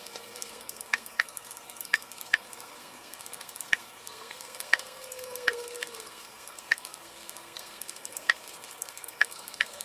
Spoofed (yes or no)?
yes